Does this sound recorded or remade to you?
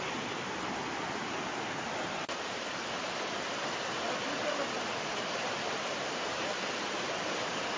recorded